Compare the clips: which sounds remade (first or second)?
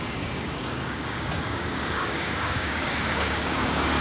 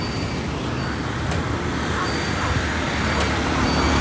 first